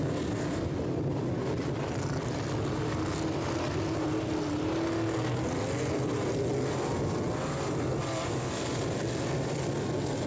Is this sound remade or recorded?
recorded